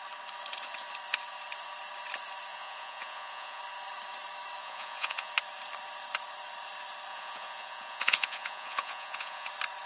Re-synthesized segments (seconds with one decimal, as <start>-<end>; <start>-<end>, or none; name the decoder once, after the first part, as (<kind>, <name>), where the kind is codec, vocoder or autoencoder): 2.5-3.6 (vocoder, Vocos); 4.6-5.3; 7.1-9.5